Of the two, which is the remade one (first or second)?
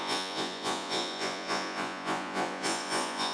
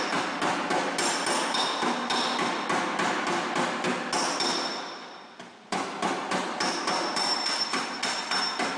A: first